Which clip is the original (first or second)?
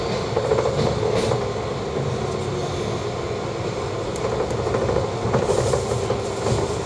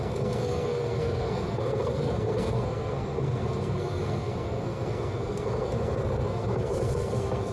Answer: first